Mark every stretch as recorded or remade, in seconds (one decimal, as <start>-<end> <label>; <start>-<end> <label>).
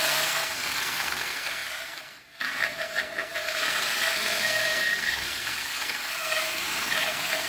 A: 0.0-7.5 remade